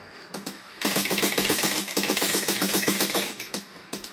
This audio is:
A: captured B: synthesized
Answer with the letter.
B